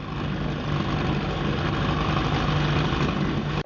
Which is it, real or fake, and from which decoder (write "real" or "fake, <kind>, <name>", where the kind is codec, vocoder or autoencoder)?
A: real